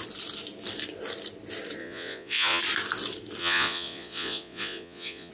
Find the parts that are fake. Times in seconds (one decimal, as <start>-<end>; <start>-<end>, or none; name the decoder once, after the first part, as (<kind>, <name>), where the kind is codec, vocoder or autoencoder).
1.8-2.6 (vocoder, Vocos); 3.4-5.3